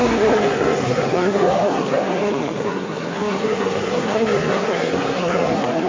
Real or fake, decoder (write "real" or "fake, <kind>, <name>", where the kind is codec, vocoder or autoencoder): fake, codec, SNAC